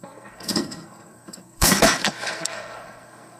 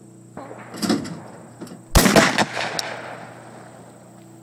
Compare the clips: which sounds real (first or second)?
second